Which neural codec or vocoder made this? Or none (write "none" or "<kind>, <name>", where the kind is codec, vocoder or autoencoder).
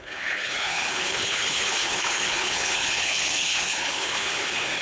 codec, HILCodec